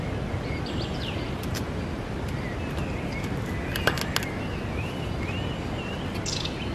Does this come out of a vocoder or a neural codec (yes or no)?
no